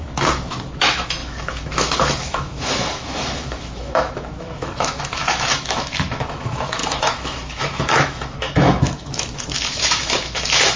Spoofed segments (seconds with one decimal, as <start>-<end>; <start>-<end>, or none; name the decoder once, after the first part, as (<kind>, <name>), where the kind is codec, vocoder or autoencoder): 0.0-10.8 (autoencoder, DAC-VAE)